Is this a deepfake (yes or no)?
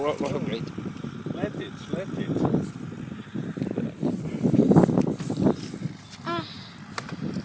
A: no